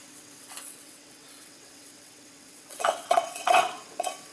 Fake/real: fake